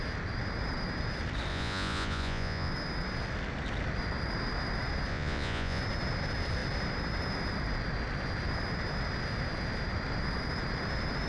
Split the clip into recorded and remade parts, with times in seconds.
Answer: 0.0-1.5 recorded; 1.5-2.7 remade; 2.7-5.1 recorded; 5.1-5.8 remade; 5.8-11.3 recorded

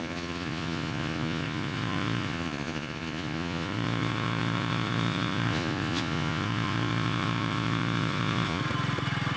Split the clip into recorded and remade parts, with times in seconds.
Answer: 0.0-8.6 remade; 8.6-9.4 recorded

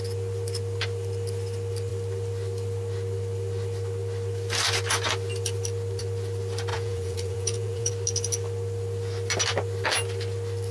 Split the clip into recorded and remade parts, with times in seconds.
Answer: 0.0-6.7 recorded; 6.7-7.9 remade; 7.9-10.7 recorded

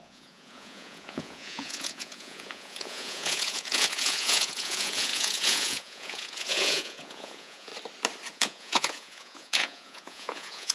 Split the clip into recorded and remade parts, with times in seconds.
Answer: 0.0-7.7 remade; 7.7-8.3 recorded; 8.3-10.7 remade

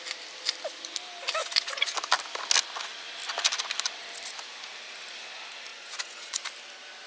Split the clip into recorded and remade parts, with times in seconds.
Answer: 0.0-1.4 recorded; 1.4-1.9 remade; 1.9-5.7 recorded; 5.7-6.4 remade; 6.4-7.1 recorded

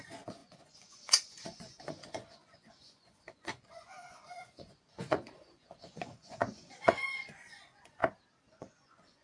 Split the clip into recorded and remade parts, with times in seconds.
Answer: 0.0-8.0 remade; 8.0-8.5 recorded; 8.5-9.2 remade

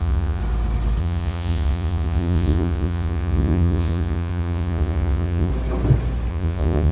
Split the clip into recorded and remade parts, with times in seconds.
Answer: 0.0-0.4 remade; 0.4-1.0 recorded; 1.0-5.5 remade; 5.5-6.3 recorded; 6.3-6.9 remade